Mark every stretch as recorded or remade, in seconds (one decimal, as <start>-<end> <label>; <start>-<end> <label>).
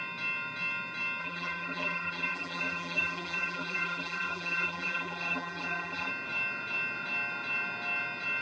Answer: 0.0-1.2 recorded; 1.2-6.1 remade; 6.1-8.4 recorded